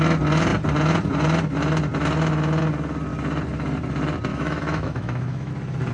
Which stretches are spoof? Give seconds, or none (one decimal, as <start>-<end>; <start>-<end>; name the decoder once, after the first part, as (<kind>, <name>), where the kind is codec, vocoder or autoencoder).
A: 4.3-5.5 (autoencoder, DAC-VAE)